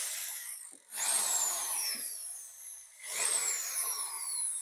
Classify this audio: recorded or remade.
remade